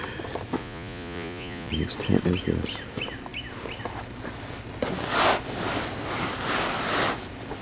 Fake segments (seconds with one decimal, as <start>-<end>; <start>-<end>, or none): 0.6-1.7